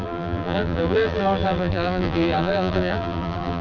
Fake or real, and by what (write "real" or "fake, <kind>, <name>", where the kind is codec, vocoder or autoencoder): fake, vocoder, BigVGAN v2